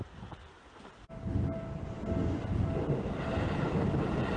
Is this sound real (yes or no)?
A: yes